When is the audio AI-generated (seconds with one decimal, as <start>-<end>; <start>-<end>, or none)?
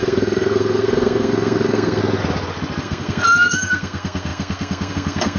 0.0-2.0; 2.8-5.4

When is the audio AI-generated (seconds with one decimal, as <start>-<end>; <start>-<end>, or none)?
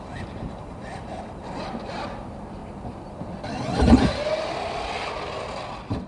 none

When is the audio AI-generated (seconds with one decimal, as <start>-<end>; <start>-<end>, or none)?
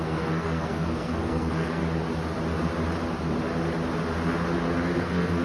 0.0-1.8; 5.0-5.4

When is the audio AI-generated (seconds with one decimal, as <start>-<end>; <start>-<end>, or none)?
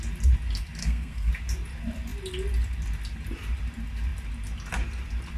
0.8-1.3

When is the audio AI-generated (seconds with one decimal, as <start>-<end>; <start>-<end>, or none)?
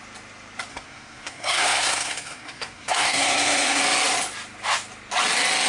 0.7-3.8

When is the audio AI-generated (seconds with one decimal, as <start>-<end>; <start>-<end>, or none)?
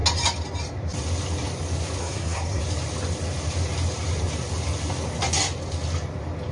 2.0-2.6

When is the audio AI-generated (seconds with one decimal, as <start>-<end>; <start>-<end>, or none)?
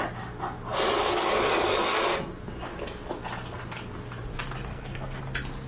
4.7-5.2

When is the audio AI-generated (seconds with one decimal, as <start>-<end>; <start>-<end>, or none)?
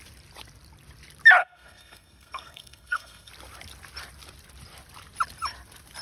1.4-3.3